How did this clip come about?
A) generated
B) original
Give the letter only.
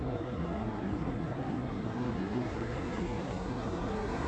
A